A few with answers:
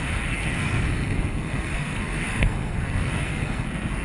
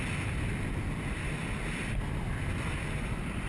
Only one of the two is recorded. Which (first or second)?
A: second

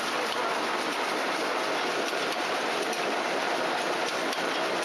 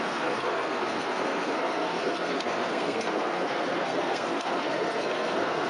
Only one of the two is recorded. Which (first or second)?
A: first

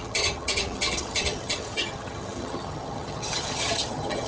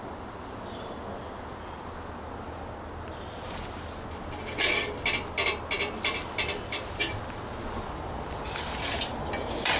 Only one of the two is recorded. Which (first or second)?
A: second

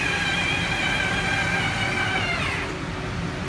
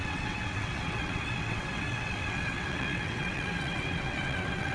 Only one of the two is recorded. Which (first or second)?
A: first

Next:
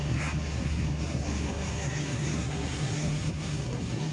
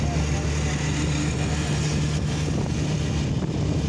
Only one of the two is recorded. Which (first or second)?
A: second